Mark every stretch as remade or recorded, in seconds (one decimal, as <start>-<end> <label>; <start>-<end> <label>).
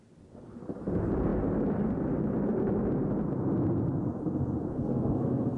0.0-4.7 recorded; 4.7-5.6 remade